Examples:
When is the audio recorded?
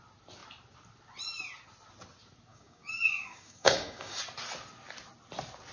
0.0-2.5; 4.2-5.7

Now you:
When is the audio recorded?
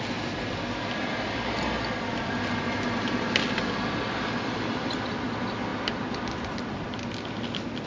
0.0-7.9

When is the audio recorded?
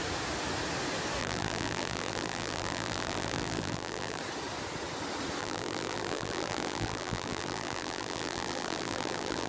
0.0-1.2; 4.2-5.4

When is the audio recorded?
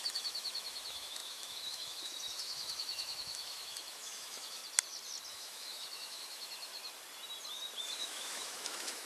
4.6-5.3; 6.7-7.8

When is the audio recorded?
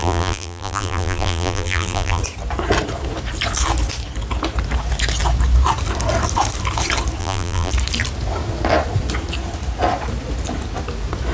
2.2-7.2; 7.7-11.3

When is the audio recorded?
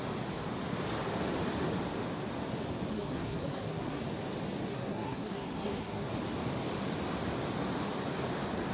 0.0-2.9; 4.0-4.7; 6.1-8.7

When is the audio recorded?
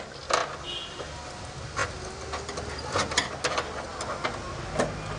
0.0-5.2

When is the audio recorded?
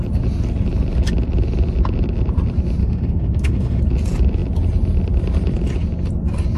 0.0-2.8; 3.8-6.6